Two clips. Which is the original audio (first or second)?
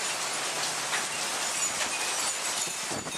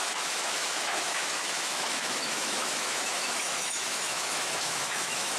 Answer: first